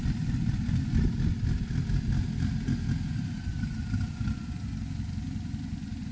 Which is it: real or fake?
real